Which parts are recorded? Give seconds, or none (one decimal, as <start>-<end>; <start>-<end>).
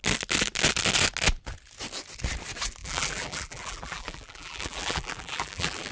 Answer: 0.0-2.8